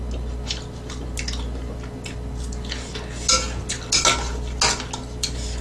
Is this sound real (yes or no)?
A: yes